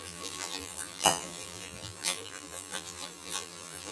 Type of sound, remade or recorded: remade